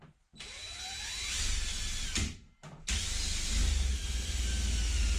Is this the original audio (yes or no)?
yes